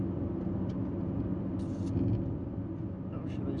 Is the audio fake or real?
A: real